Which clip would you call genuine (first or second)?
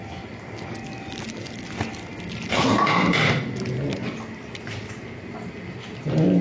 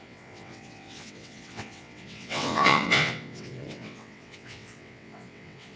first